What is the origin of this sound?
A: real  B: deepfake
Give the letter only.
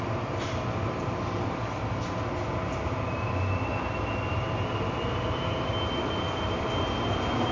A